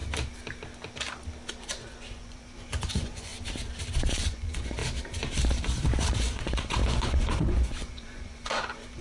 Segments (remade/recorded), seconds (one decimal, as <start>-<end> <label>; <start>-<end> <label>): 0.0-1.6 recorded; 1.6-3.3 remade; 3.3-4.1 recorded; 4.1-4.8 remade; 4.8-6.1 recorded; 6.1-9.0 remade